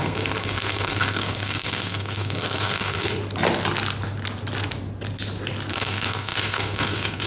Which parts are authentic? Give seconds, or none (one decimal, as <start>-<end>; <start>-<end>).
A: 3.2-5.7